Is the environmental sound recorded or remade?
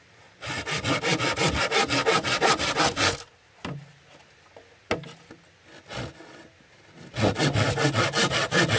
recorded